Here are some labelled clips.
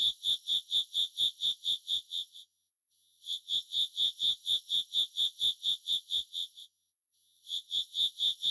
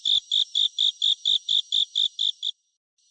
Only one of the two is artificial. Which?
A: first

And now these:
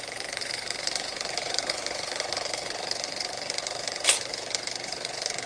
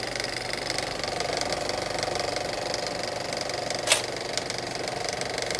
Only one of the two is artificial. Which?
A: first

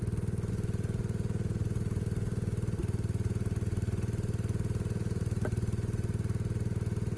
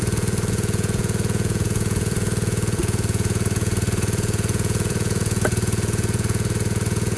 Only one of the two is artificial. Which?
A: second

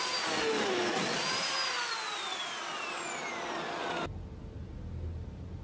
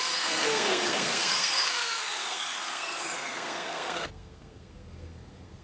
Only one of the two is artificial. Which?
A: second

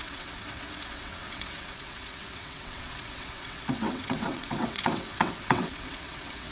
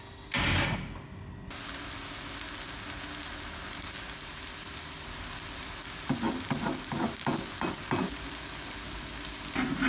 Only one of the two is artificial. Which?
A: first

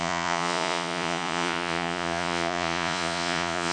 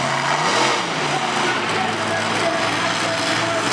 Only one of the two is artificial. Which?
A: first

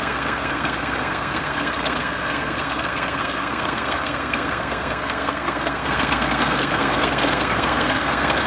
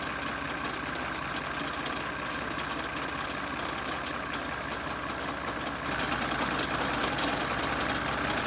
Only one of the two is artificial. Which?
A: first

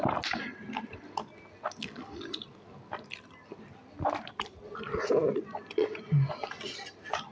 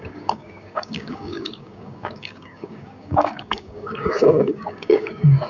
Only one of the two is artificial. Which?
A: second